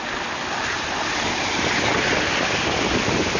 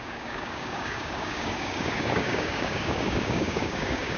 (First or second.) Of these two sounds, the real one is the first